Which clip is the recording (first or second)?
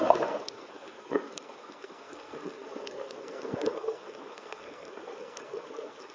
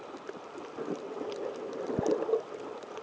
second